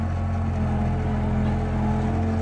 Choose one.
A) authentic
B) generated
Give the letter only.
A